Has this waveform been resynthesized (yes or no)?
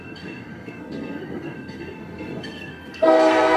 yes